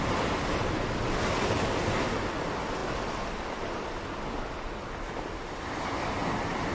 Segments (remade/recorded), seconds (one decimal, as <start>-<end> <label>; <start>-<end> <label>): 0.0-6.7 recorded